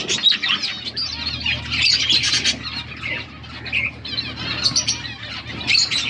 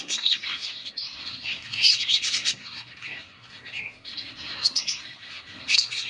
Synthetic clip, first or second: second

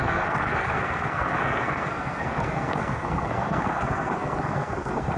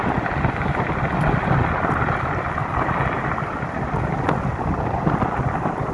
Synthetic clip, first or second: first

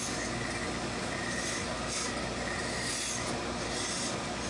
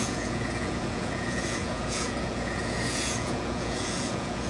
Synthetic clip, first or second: second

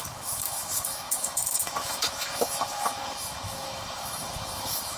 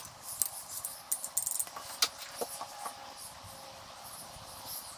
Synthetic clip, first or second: first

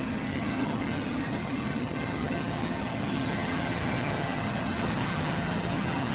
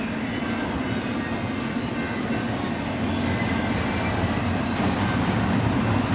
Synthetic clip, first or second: first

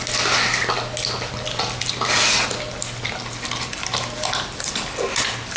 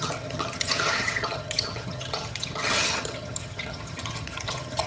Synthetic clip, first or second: second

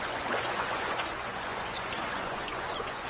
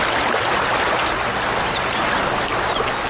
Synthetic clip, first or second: first